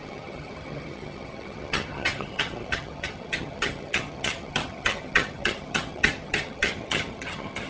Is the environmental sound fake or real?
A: fake